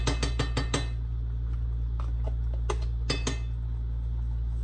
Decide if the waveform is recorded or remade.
recorded